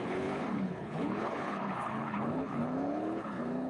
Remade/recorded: remade